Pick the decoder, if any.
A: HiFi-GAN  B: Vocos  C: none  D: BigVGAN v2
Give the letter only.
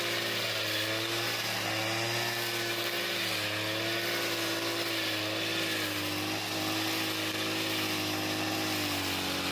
C